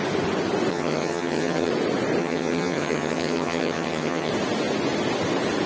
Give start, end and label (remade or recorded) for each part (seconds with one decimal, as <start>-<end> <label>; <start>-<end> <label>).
0.0-0.7 recorded; 0.7-1.7 remade; 1.7-2.2 recorded; 2.2-4.3 remade; 4.3-5.7 recorded